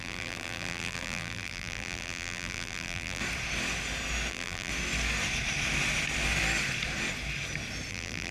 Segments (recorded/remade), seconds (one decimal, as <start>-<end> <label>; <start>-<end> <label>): 0.0-3.2 remade; 3.2-4.3 recorded; 4.3-4.7 remade; 4.7-7.9 recorded; 7.9-8.3 remade